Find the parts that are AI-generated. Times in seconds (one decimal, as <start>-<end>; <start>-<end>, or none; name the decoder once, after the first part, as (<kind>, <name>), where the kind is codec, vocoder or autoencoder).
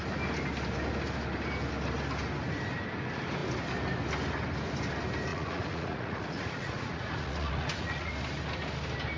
5.3-8.1 (vocoder, Vocos)